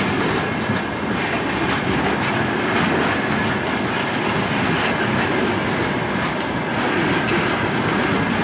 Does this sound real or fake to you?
real